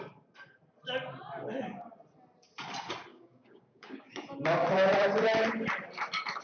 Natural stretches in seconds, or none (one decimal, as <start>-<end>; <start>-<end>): 0.0-3.1; 4.2-6.4